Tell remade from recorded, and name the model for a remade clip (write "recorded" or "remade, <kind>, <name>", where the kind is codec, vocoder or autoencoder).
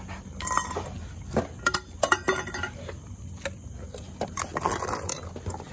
recorded